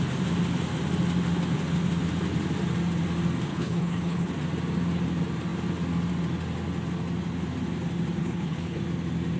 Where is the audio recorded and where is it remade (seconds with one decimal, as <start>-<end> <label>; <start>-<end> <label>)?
0.0-3.5 recorded; 3.5-4.3 remade; 4.3-8.2 recorded; 8.2-8.8 remade; 8.8-9.4 recorded